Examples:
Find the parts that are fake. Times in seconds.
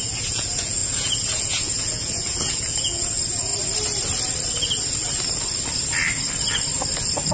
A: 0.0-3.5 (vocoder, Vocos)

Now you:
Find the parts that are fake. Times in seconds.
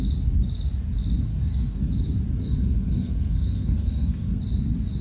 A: 1.3-1.9 (codec, SNAC); 2.3-4.4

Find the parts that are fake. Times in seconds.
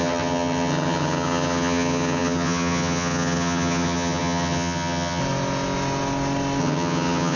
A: 0.0-5.2 (vocoder, HiFi-GAN); 6.6-7.4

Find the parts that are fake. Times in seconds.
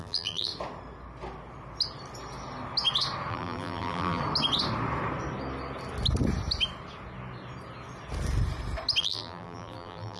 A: 0.0-0.5 (vocoder, BigVGAN v2); 3.3-4.2; 9.0-10.2